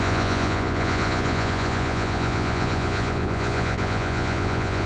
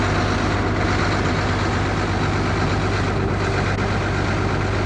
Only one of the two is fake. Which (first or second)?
first